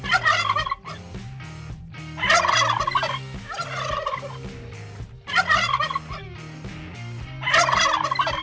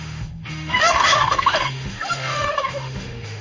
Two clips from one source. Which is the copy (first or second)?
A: second